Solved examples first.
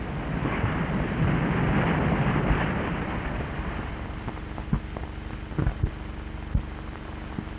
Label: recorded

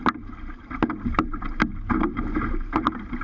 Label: recorded